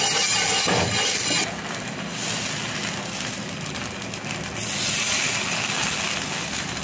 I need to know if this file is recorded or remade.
recorded